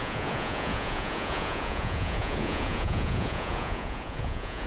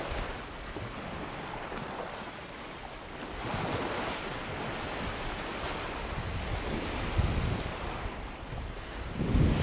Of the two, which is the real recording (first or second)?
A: second